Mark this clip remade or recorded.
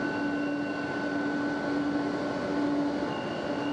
recorded